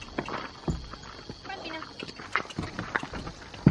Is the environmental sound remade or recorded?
recorded